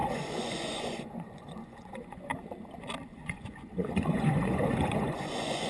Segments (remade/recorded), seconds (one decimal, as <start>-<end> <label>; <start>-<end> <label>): 0.0-2.3 remade; 2.3-3.0 recorded; 3.0-5.7 remade